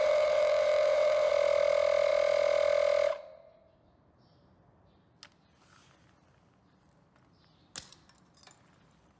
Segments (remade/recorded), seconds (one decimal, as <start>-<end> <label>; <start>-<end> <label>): 0.0-1.3 remade; 1.3-9.2 recorded